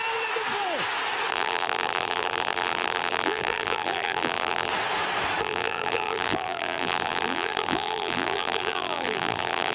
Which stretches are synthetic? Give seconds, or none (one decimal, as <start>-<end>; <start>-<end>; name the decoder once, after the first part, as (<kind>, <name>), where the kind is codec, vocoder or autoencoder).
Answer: 1.3-4.7 (vocoder, BigVGAN v2); 5.4-9.7